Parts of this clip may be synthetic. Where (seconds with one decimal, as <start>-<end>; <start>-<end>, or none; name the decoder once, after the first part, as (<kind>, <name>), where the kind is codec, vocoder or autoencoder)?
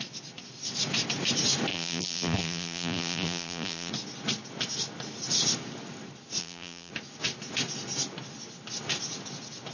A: 1.7-3.9 (vocoder, BigVGAN v2); 6.4-6.9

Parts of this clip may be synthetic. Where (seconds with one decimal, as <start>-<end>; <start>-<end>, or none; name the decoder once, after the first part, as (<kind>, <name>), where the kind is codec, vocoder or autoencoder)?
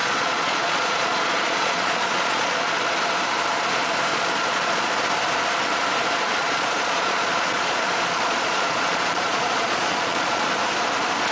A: 0.0-2.6 (vocoder, Vocos); 4.1-4.9; 6.4-10.5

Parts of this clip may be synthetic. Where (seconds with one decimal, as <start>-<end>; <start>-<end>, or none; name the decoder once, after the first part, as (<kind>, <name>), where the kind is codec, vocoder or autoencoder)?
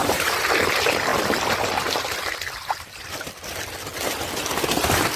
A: 0.0-0.5 (vocoder, BigVGAN v2)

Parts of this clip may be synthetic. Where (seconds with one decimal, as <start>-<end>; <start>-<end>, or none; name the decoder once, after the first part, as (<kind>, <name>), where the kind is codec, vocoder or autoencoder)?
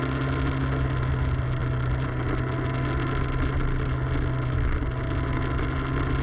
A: none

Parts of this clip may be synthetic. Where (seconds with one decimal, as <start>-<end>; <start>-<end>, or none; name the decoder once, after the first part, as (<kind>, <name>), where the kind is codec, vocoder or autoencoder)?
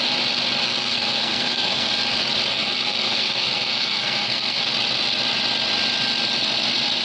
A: 0.6-1.9 (codec, SNAC); 2.5-4.6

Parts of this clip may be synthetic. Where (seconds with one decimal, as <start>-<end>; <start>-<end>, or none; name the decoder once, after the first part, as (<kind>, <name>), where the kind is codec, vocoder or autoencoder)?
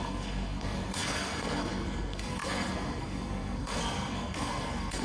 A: 0.0-5.0 (codec, SNAC)